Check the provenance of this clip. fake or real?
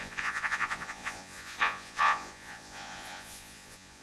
fake